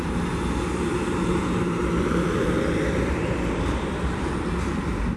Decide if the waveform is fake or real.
fake